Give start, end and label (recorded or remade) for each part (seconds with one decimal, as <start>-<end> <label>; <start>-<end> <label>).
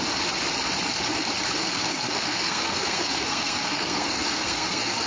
0.0-1.6 recorded; 1.6-5.1 remade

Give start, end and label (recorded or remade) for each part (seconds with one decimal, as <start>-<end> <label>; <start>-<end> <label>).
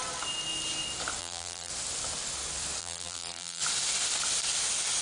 0.0-1.2 recorded; 1.2-1.7 remade; 1.7-2.8 recorded; 2.8-3.6 remade; 3.6-5.0 recorded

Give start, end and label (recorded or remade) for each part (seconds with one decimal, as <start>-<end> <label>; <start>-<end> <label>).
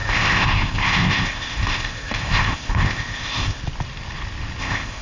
0.0-3.6 remade; 3.6-4.6 recorded; 4.6-5.0 remade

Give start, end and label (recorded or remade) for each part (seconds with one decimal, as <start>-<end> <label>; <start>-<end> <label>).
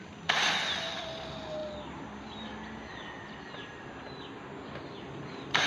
0.0-5.7 recorded